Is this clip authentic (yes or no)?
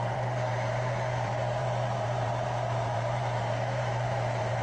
no